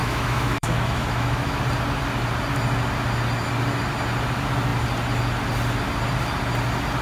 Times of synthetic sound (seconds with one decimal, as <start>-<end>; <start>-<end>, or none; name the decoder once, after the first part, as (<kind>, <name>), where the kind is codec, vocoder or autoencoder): 0.0-1.6 (autoencoder, DAC-VAE)